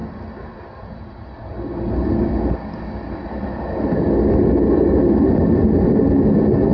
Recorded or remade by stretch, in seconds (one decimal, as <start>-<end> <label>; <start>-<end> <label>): 0.0-6.7 recorded